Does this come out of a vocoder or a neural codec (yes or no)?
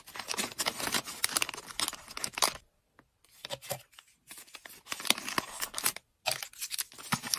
no